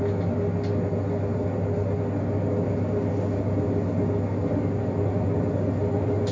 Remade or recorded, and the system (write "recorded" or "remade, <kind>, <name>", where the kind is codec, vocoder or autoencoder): recorded